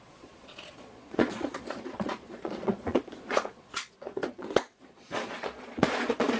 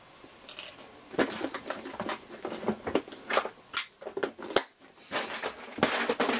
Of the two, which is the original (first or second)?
second